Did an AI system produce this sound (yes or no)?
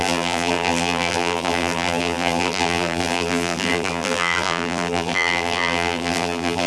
yes